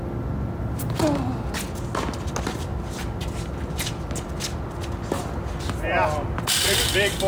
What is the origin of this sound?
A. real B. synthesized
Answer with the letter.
A